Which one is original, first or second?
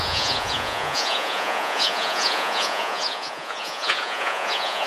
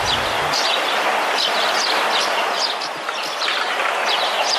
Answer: second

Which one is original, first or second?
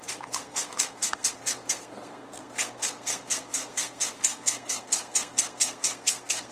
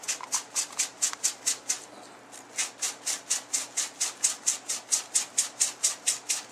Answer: second